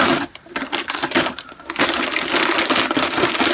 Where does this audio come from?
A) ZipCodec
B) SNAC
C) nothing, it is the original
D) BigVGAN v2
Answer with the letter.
C